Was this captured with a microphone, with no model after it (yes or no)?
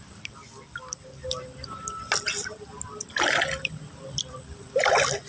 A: yes